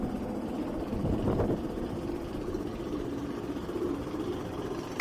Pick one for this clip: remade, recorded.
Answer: recorded